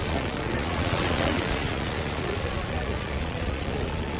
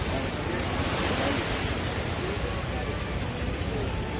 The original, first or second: second